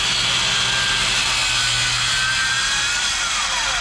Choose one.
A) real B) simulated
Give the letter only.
A